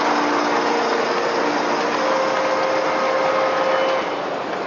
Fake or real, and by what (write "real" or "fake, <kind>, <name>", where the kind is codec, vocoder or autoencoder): real